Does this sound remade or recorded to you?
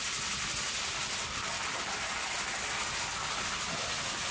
recorded